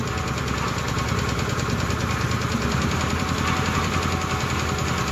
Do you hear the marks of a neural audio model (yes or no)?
no